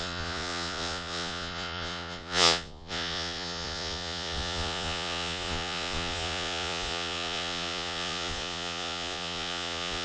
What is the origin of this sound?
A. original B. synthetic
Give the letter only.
B